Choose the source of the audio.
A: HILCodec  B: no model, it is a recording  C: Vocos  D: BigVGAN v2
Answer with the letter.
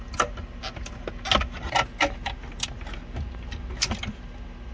B